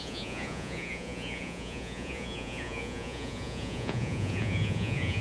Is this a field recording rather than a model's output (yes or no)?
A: no